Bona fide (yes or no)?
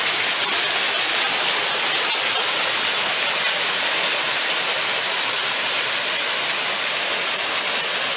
yes